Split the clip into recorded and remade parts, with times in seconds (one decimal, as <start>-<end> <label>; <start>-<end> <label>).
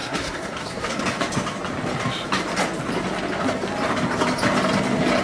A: 0.0-1.0 remade; 1.0-5.2 recorded